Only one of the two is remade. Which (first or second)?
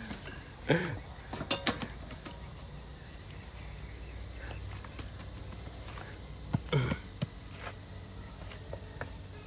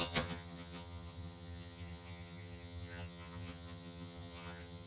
second